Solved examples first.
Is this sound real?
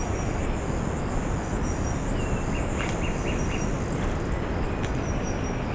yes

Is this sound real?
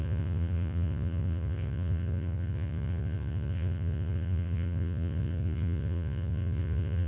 no